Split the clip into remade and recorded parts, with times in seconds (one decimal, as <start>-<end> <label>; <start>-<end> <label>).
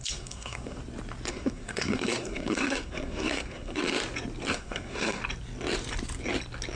0.0-0.8 remade; 0.8-1.3 recorded; 1.3-3.8 remade; 3.8-4.5 recorded; 4.5-5.2 remade; 5.2-6.8 recorded